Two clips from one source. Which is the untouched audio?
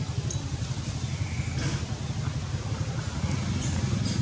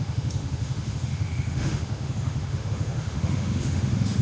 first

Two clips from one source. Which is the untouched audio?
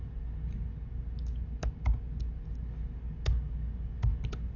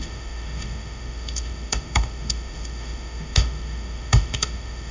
first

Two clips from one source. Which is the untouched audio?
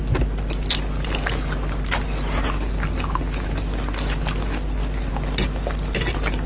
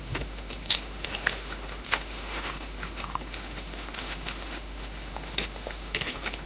first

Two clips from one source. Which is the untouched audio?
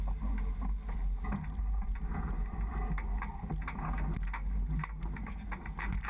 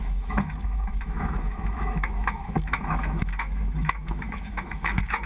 first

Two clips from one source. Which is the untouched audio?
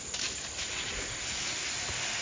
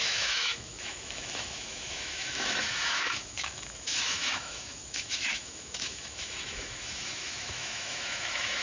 first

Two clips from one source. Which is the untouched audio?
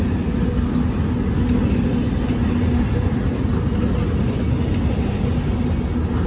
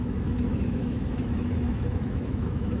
first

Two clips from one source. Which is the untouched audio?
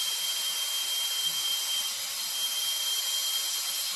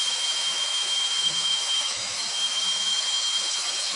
first